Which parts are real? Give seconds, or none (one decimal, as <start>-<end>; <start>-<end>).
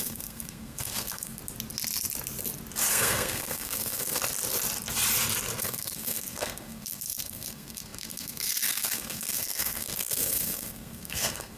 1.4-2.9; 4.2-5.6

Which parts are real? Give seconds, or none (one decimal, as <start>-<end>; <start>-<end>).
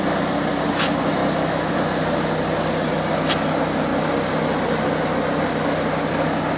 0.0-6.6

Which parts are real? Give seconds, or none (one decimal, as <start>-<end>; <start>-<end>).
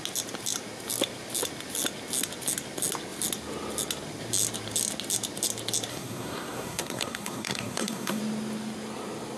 0.0-5.9; 8.2-9.4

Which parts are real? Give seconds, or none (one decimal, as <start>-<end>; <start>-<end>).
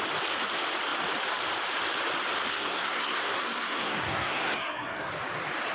0.0-2.5; 5.1-5.7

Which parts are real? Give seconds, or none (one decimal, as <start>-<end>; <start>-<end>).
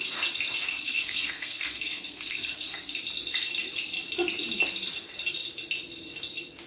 0.0-0.7; 3.0-6.7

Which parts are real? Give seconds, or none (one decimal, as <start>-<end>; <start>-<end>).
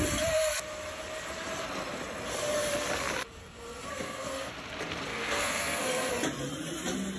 0.0-3.4; 4.5-5.1; 6.1-7.2